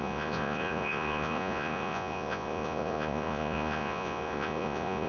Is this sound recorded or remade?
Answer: remade